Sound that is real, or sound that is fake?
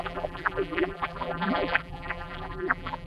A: fake